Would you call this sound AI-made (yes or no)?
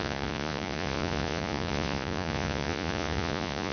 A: yes